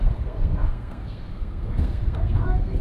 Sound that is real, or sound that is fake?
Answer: fake